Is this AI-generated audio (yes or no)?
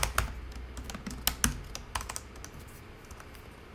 no